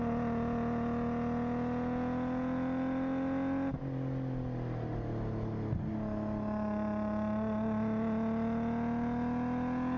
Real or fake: real